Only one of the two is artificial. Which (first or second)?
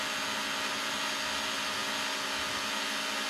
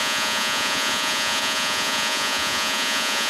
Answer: second